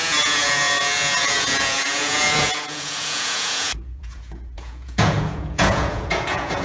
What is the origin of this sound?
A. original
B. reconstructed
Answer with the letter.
B